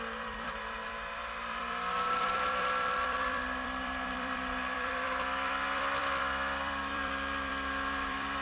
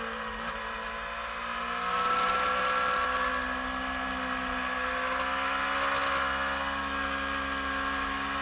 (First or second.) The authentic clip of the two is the second